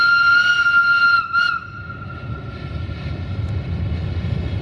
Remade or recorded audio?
recorded